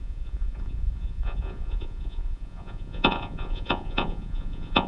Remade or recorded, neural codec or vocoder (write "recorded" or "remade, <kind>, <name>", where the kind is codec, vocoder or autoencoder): remade, vocoder, Vocos